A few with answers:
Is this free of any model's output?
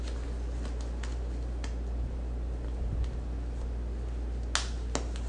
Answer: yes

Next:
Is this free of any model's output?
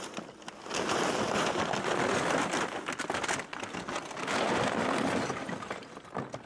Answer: yes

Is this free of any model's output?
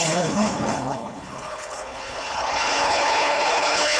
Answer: no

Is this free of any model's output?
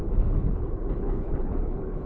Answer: no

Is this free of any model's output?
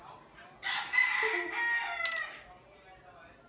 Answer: yes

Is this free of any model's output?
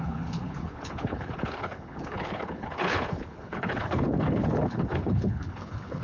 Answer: no